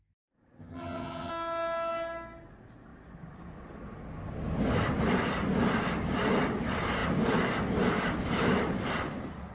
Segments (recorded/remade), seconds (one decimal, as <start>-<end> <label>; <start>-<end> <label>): 0.0-0.6 recorded; 0.6-1.3 remade; 1.3-9.5 recorded